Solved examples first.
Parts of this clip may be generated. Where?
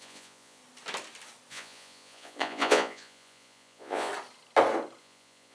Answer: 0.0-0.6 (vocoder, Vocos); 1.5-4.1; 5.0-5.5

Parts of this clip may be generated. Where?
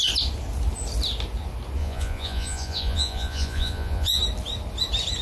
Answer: 1.8-4.2 (vocoder, Vocos)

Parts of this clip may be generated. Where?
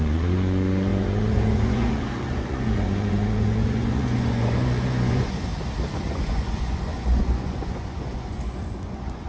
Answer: 0.0-5.5 (vocoder, Vocos); 6.1-9.3